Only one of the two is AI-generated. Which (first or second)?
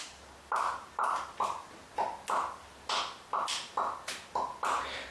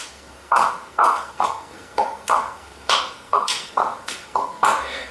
second